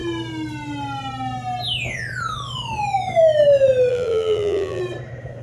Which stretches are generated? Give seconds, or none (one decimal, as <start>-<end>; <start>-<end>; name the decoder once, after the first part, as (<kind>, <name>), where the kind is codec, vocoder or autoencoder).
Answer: 3.9-4.8 (vocoder, BigVGAN v2)